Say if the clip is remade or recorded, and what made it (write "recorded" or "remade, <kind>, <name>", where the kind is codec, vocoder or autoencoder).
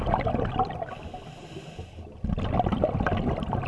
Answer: recorded